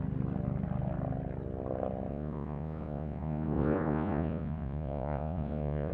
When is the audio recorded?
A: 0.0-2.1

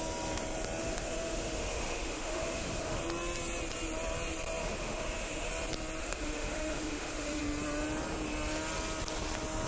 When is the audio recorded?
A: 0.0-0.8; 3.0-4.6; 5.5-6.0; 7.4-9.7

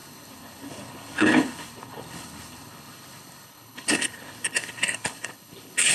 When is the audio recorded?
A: none

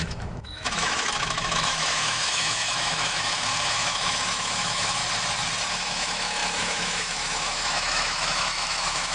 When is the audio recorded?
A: 5.0-5.7

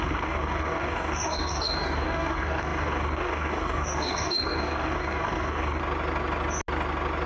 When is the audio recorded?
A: 5.8-7.3

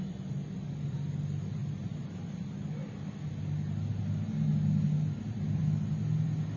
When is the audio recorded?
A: 0.0-6.6